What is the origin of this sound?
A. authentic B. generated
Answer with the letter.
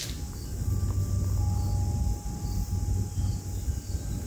A